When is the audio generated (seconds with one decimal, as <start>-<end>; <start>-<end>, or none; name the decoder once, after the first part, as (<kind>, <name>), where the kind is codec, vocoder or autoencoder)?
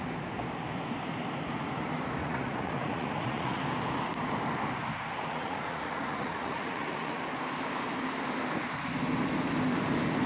2.2-3.6 (vocoder, Vocos); 5.3-7.2